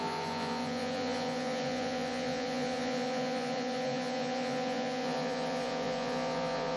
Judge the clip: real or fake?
fake